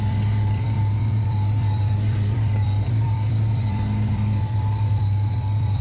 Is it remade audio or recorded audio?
remade